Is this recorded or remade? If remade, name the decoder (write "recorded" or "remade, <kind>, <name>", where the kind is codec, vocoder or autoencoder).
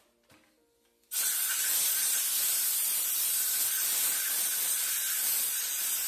recorded